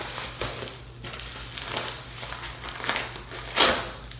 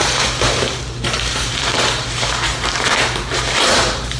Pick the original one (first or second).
first